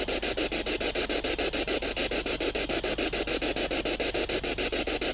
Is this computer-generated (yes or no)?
no